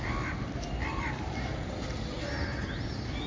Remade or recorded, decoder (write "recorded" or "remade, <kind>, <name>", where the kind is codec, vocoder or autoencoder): recorded